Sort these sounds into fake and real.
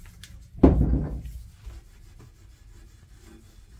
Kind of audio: real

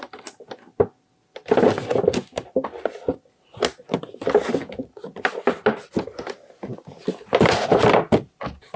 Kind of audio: real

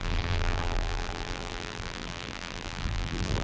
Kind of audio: fake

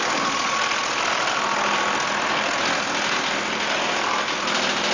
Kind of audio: real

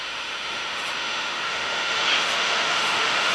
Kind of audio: fake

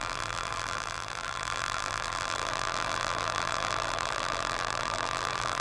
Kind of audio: fake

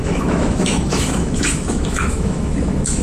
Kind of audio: fake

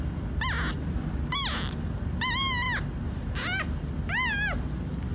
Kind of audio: real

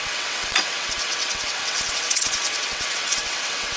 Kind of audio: fake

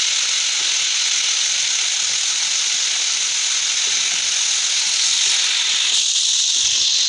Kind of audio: real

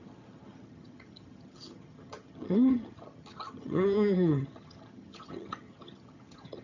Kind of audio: fake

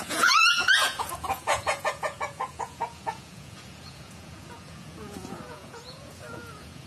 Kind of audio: fake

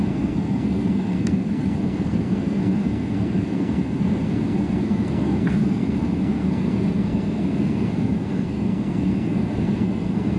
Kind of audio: fake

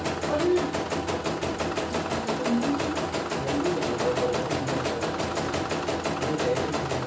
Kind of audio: real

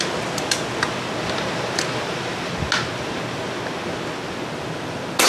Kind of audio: real